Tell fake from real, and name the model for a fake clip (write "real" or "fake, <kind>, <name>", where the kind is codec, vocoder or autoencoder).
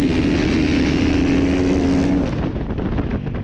real